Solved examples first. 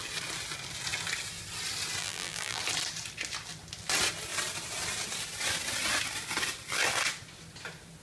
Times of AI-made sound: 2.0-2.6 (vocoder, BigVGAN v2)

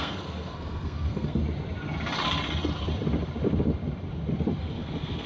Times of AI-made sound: 0.0-1.4 (codec, SNAC); 4.6-5.3

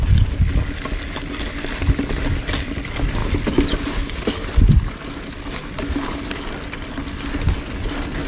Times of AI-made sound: none

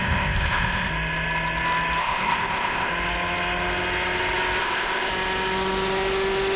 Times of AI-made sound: 0.0-0.9 (codec, ZipCodec); 2.0-2.9; 4.6-5.1